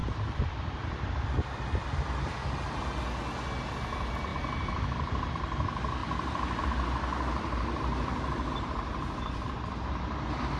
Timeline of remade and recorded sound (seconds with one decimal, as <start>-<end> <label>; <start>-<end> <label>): 0.0-1.2 remade; 1.2-4.3 recorded; 4.3-5.3 remade; 5.3-6.0 recorded; 6.0-6.6 remade; 6.6-7.1 recorded; 7.1-9.5 remade; 9.5-10.6 recorded